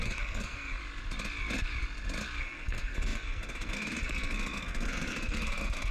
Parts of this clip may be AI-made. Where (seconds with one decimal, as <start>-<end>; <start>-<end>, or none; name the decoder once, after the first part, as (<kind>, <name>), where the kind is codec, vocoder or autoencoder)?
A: 0.0-0.8 (codec, SNAC); 2.4-5.9